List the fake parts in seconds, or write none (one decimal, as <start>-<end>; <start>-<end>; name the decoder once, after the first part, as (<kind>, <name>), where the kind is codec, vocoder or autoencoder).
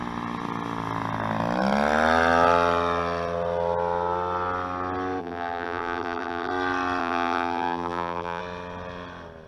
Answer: 5.2-6.5 (vocoder, BigVGAN v2); 7.0-8.4